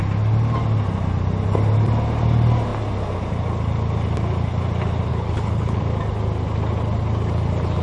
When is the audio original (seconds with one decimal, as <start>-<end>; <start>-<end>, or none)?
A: 0.0-5.1; 5.8-7.8